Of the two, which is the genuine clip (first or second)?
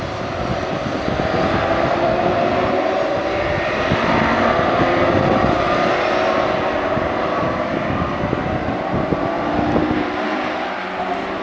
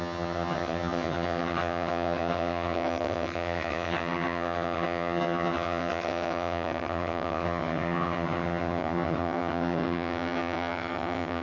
first